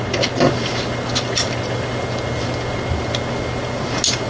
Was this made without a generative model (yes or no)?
yes